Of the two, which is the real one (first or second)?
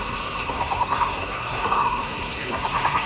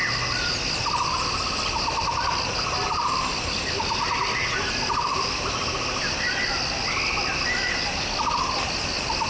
second